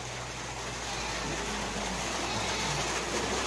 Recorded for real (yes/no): yes